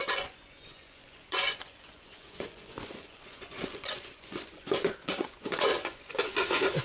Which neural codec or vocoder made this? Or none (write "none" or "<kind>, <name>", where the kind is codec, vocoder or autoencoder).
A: vocoder, Vocos